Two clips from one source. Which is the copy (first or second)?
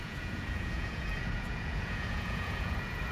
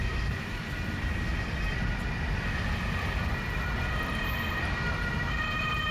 first